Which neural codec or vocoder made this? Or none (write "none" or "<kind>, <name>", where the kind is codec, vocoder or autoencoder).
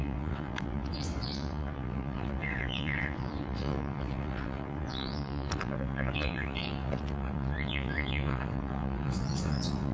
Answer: vocoder, WaveNeXt